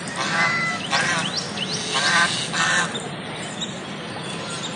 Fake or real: real